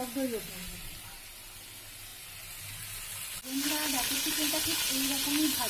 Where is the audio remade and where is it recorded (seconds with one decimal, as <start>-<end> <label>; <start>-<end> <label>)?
0.0-5.7 recorded